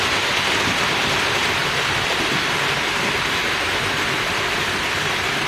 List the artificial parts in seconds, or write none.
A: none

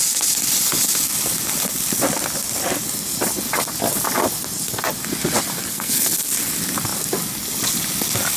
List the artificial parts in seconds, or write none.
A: 5.7-6.3

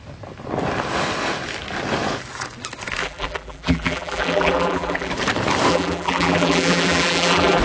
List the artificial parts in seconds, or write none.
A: 3.0-5.1; 5.7-7.6

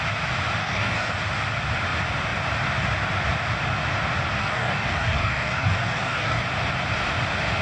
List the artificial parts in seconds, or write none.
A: 0.6-1.1; 4.4-6.4